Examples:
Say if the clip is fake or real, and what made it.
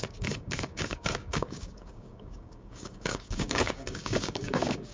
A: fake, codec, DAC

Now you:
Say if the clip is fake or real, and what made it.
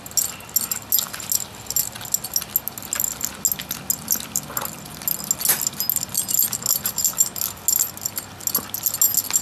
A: real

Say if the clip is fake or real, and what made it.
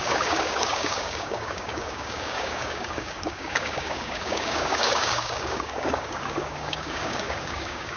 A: fake, codec, DAC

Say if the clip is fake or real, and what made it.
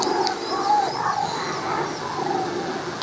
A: real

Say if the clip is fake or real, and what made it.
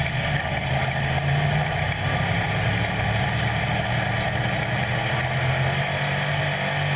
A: real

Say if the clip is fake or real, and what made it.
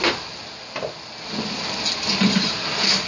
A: real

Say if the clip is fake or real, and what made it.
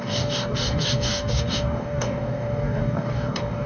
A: fake, codec, DAC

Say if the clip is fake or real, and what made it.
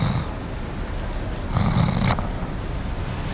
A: real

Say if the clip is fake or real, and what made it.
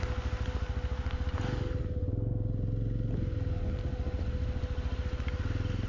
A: real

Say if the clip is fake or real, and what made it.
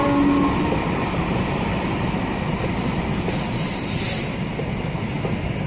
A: real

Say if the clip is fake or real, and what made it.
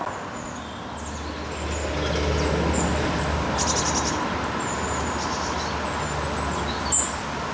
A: real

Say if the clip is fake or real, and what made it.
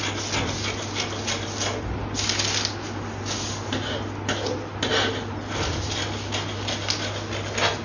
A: real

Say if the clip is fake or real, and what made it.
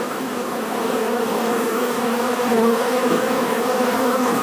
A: fake, codec, DAC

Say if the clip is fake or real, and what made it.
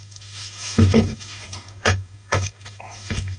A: fake, codec, DAC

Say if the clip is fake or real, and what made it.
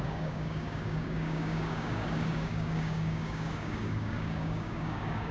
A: fake, codec, DAC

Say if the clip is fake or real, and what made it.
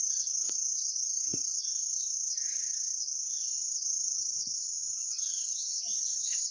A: fake, codec, DAC